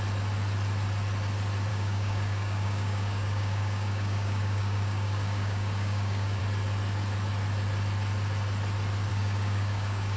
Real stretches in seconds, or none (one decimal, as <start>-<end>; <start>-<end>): 0.0-1.7; 6.4-9.1